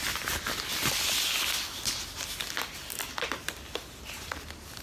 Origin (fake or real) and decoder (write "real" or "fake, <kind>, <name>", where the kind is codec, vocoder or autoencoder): real